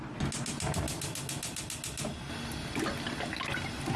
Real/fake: real